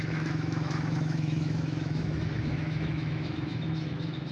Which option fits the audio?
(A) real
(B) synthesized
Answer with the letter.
B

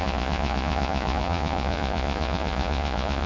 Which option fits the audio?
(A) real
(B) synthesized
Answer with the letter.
B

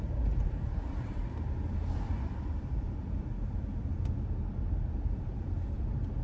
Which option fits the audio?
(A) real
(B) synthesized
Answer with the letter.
B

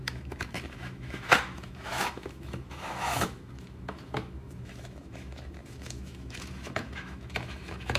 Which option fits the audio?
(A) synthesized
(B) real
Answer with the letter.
A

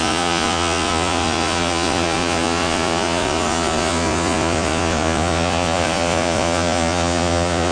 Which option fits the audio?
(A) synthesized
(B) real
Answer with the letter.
A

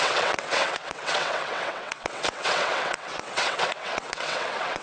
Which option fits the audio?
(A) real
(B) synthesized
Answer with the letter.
B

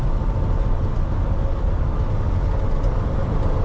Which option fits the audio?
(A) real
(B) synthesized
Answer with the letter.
A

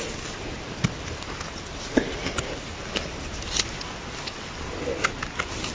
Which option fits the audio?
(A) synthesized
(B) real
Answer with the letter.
B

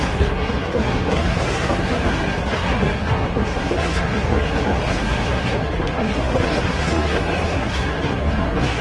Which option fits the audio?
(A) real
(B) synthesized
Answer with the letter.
B